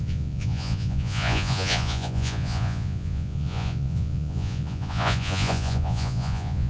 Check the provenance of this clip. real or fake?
fake